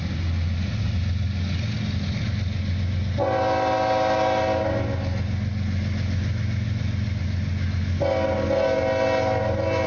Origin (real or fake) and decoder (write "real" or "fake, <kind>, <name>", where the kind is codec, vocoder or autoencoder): real